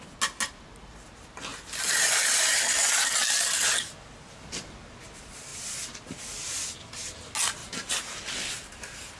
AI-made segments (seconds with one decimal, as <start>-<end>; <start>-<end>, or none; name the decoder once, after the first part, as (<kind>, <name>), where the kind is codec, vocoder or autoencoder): 1.5-3.7 (vocoder, BigVGAN v2); 7.6-8.2